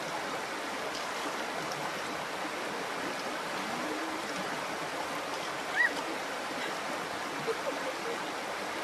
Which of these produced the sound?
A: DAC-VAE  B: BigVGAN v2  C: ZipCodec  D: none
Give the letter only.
D